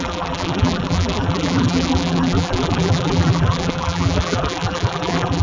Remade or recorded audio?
remade